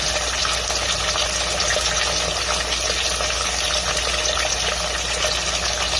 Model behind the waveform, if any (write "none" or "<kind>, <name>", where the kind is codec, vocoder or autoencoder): none